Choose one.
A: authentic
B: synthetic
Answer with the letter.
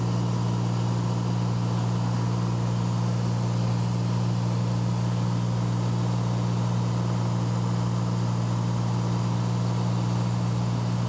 A